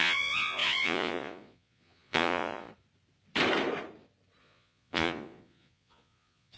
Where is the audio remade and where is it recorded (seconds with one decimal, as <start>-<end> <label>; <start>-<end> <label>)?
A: 0.0-2.7 remade; 2.7-4.4 recorded; 4.4-6.6 remade